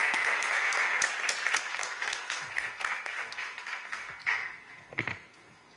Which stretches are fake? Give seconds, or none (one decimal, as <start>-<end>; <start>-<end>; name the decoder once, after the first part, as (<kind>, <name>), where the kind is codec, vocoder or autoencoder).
0.0-1.0 (codec, SNAC); 1.5-5.8